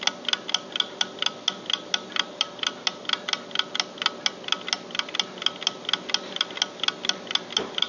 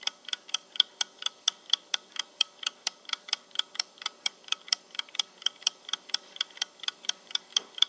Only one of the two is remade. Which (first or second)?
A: second